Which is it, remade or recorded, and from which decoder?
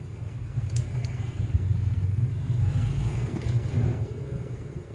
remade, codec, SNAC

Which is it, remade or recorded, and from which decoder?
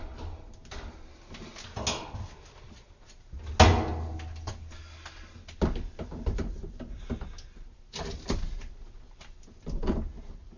recorded